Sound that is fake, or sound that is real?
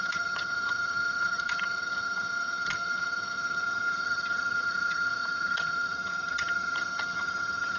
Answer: fake